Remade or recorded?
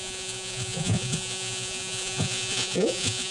remade